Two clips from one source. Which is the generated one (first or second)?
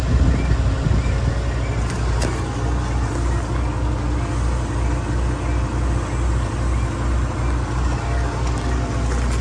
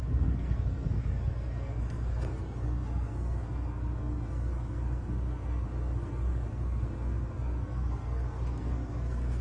second